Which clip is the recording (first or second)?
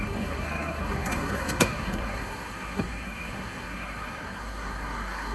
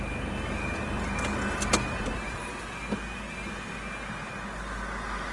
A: second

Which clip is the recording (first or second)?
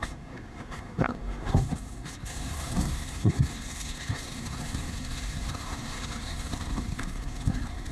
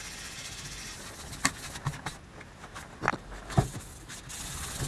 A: second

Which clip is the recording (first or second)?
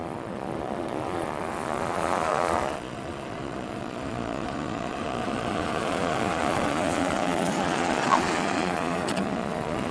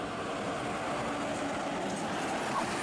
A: second